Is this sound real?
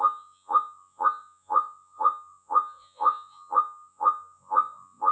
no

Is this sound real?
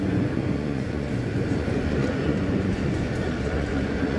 no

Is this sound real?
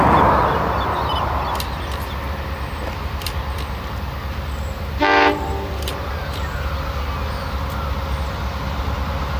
yes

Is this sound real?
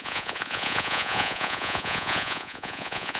no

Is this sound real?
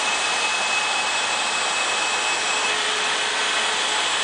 yes